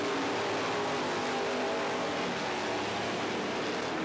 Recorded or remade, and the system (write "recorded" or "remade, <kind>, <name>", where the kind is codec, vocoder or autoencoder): recorded